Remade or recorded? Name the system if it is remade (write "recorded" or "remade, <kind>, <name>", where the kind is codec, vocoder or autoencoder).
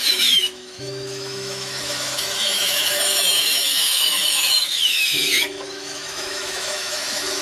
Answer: remade, autoencoder, DAC-VAE